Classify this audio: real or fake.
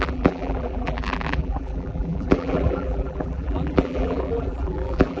fake